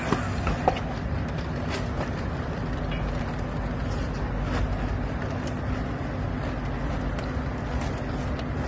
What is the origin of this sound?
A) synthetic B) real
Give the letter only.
B